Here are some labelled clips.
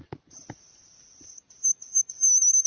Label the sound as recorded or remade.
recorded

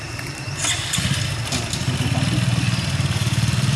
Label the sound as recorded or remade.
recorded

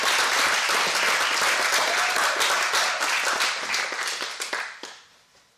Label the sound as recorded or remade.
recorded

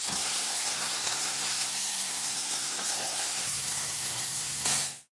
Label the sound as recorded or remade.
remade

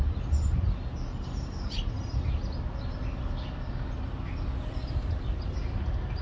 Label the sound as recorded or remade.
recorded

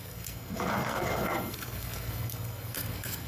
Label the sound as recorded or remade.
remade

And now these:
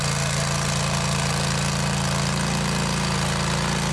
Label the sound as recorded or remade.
recorded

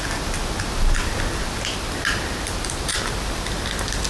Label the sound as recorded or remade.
recorded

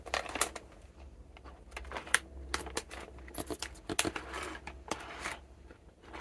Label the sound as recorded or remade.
recorded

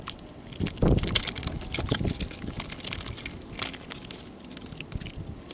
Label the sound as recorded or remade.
recorded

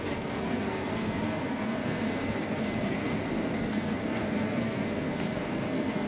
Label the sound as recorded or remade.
remade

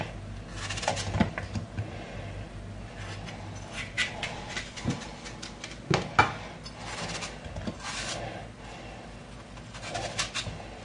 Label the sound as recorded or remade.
recorded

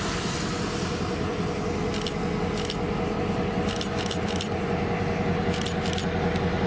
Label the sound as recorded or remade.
recorded